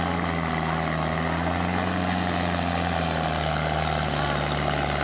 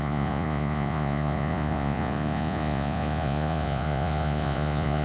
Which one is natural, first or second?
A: first